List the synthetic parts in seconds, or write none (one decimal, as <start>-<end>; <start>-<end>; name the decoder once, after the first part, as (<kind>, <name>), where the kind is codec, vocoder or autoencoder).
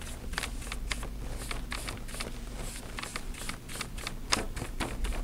3.1-5.2 (vocoder, BigVGAN v2)